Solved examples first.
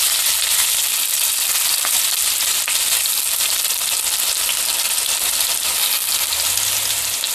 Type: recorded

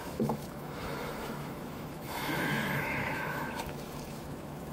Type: remade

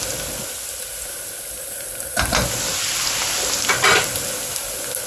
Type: recorded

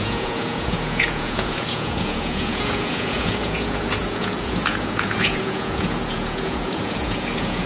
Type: remade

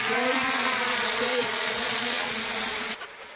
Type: remade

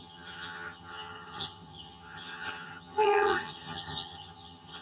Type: remade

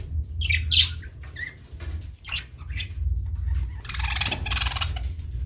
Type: recorded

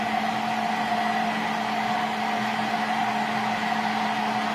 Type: recorded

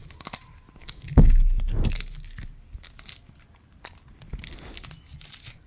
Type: recorded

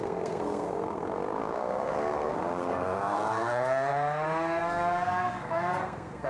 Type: remade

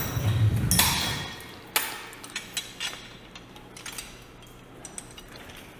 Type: recorded